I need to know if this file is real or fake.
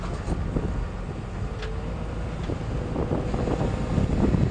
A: real